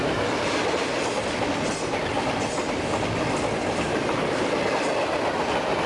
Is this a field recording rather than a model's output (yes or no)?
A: yes